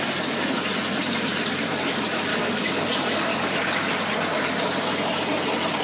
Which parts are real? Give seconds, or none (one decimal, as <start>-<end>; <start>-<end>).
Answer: 0.0-2.3; 2.9-3.3; 3.8-5.8